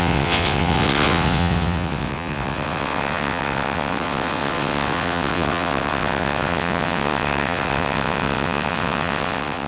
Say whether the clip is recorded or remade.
remade